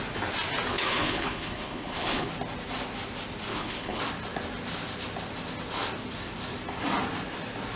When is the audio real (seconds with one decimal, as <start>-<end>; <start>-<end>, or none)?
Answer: 0.0-0.7; 2.3-3.5; 4.0-7.8